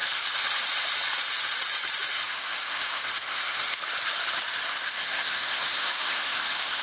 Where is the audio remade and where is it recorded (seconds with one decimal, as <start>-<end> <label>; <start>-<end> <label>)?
0.0-2.1 recorded; 2.1-3.8 remade; 3.8-4.7 recorded; 4.7-6.8 remade